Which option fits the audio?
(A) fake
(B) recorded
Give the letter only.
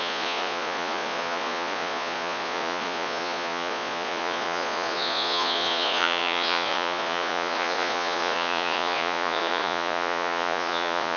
A